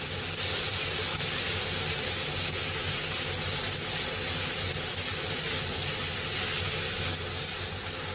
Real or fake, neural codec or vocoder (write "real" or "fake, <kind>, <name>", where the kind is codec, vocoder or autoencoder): real